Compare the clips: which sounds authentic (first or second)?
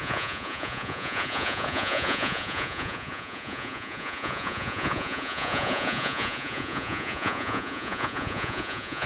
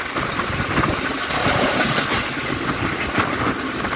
second